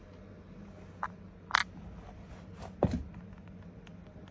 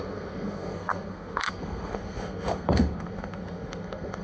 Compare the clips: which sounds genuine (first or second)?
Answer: first